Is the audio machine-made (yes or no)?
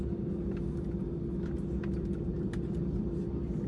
no